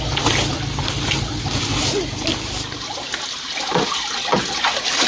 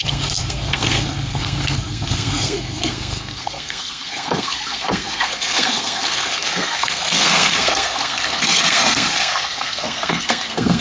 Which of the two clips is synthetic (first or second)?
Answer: second